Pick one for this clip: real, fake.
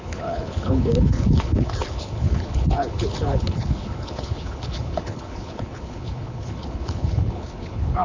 fake